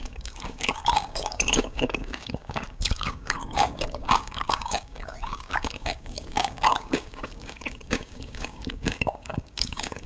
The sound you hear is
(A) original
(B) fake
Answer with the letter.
B